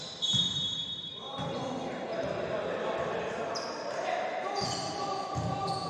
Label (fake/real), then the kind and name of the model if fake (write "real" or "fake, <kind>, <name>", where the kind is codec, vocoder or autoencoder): real